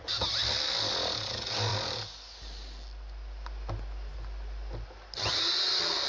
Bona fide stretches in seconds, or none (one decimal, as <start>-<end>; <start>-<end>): 0.0-6.1